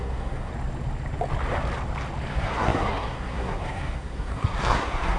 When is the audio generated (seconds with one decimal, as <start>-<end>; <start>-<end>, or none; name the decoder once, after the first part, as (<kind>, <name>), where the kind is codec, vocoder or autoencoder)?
0.0-0.5 (codec, SNAC); 2.3-5.2